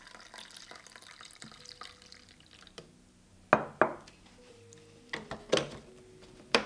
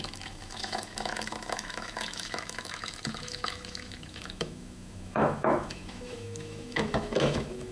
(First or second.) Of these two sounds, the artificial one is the second